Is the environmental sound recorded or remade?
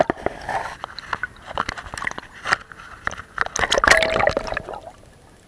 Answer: recorded